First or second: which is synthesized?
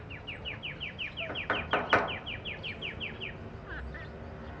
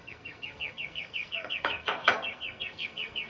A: second